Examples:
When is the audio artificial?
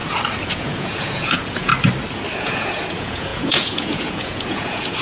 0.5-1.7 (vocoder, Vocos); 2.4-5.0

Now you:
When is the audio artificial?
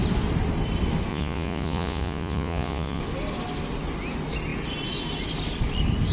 1.1-3.0 (vocoder, Vocos)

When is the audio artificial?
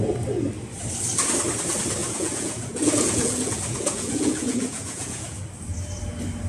2.0-5.4 (vocoder, Vocos)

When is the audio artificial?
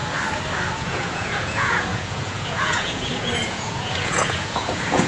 0.8-5.1 (vocoder, Vocos)